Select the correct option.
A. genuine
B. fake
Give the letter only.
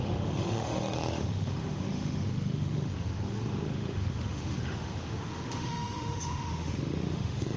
B